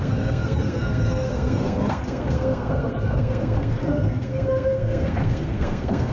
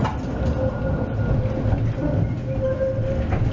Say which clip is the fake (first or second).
first